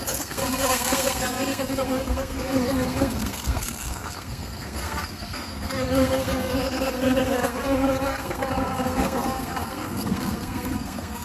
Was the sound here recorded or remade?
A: remade